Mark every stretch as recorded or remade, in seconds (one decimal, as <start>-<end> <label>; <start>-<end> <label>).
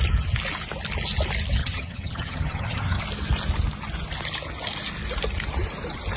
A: 0.0-1.6 recorded; 1.6-3.0 remade; 3.0-6.2 recorded